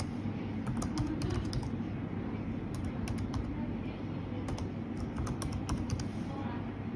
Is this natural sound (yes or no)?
yes